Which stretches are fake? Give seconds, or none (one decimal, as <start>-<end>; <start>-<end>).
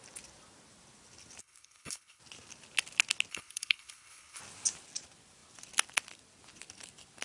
1.4-2.2; 3.3-4.4